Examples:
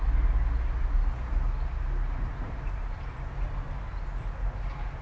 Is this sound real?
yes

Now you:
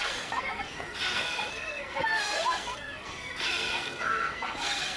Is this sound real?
no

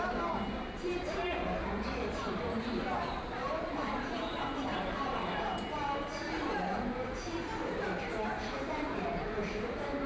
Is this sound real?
no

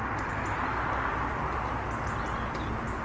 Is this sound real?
yes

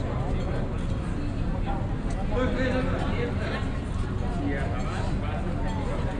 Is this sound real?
yes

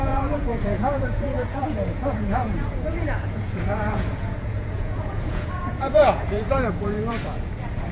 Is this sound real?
no